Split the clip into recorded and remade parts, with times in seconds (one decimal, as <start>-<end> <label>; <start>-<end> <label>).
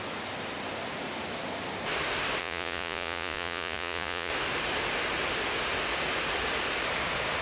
0.0-2.4 recorded; 2.4-4.3 remade; 4.3-7.4 recorded